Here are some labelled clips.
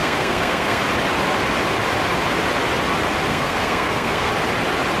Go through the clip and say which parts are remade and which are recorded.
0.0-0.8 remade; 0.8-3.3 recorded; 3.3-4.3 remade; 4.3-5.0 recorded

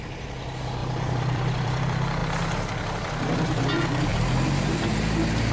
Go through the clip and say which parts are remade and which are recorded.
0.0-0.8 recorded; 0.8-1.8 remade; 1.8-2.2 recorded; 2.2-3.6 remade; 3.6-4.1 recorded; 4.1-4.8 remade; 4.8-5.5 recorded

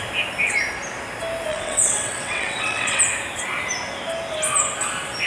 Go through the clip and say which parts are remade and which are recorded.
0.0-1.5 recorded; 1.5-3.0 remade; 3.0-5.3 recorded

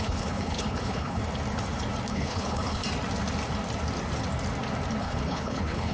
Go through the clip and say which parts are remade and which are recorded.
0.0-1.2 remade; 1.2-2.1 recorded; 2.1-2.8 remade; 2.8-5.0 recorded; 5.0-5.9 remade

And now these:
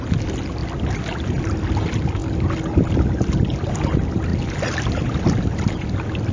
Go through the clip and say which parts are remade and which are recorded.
0.0-6.3 recorded